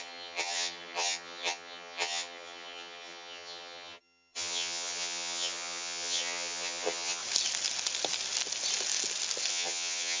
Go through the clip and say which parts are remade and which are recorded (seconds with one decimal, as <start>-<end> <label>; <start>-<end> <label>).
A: 0.0-7.2 remade; 7.2-9.5 recorded; 9.5-10.2 remade

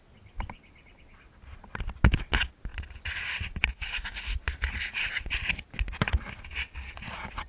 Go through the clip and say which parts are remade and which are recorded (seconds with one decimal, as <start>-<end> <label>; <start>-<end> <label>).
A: 0.0-7.5 recorded

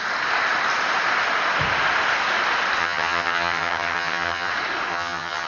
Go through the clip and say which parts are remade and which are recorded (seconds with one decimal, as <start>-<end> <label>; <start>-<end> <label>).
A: 0.0-2.8 recorded; 2.8-4.5 remade; 4.5-4.9 recorded; 4.9-5.5 remade

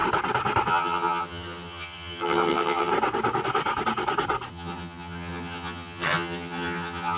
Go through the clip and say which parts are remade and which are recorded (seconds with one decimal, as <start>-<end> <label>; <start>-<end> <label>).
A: 0.0-0.7 recorded; 0.7-2.9 remade; 2.9-4.5 recorded; 4.5-7.2 remade